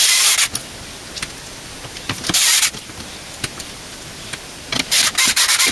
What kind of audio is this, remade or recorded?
recorded